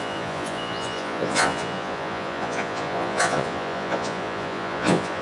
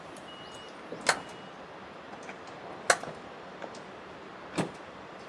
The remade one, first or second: first